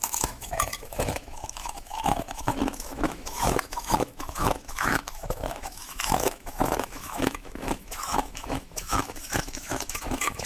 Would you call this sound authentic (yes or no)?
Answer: no